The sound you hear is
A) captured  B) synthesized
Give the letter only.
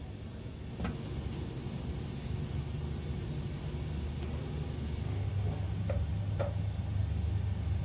A